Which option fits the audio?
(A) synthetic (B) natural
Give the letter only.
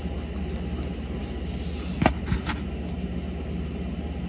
B